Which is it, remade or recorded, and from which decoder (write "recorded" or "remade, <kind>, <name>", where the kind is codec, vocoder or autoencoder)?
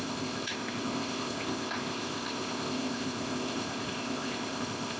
remade, codec, ZipCodec